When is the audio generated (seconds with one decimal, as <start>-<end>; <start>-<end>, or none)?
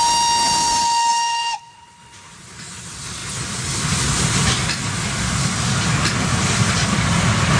none